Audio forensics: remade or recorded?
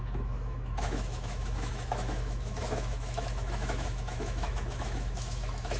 remade